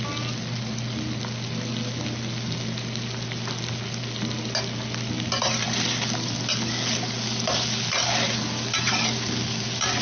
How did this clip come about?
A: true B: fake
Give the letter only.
A